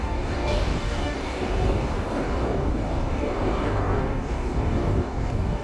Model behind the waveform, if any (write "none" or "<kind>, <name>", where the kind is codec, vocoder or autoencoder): codec, DAC